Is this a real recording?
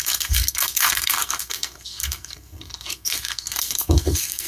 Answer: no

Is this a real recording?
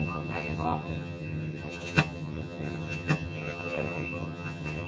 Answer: no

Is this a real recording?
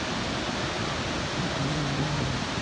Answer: yes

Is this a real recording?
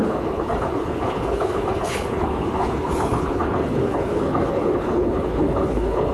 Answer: no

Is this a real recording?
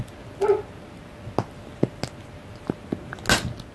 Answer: yes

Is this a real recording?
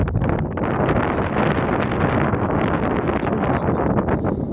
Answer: yes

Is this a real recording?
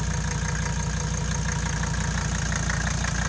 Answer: yes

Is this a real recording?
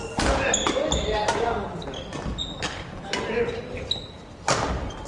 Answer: yes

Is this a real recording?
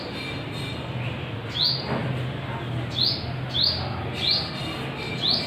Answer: yes